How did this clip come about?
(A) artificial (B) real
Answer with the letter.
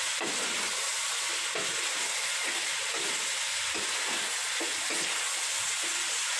B